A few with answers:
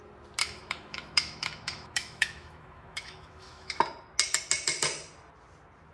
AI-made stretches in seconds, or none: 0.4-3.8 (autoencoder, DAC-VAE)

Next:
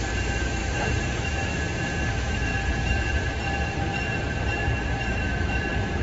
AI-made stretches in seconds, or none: 0.0-0.6 (autoencoder, DAC-VAE); 1.1-1.5; 2.1-2.5; 5.1-6.0